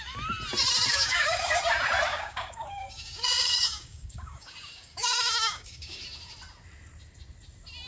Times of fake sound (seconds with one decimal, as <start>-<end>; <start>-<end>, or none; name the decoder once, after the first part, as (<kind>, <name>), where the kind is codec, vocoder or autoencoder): 0.9-1.6 (codec, DAC); 2.1-6.0